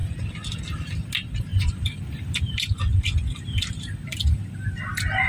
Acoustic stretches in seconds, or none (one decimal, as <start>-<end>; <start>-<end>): 0.0-1.5; 4.7-5.3